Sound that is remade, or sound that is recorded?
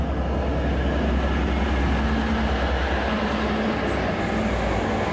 recorded